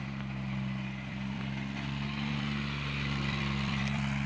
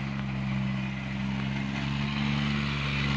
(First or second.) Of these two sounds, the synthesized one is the first